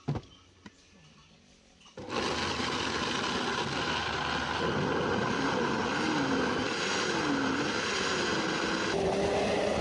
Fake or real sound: real